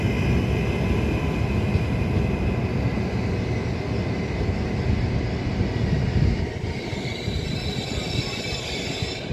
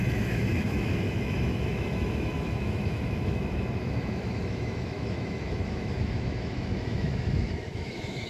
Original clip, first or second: first